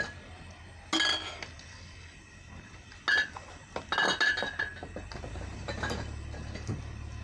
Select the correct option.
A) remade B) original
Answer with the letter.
B